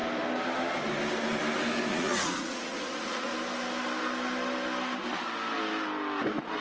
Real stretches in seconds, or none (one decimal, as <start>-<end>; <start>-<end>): 0.0-1.9; 3.3-6.6

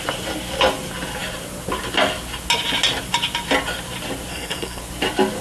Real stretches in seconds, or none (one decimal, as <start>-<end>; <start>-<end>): 0.0-4.3; 4.8-5.4

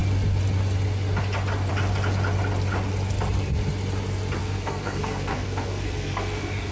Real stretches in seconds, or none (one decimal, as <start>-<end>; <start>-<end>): 0.0-4.4

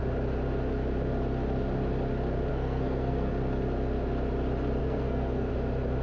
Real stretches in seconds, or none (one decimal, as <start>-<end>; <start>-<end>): 0.0-2.5; 3.3-4.8; 5.5-6.0

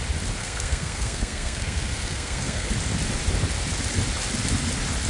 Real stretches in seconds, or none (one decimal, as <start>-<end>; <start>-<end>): 0.0-0.4; 2.7-5.1

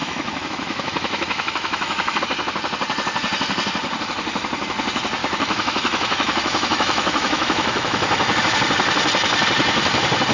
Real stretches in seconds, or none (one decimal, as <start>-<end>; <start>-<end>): 2.2-5.2; 8.4-10.3